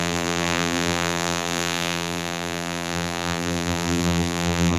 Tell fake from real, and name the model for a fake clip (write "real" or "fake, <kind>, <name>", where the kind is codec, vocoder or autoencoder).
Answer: fake, vocoder, BigVGAN v2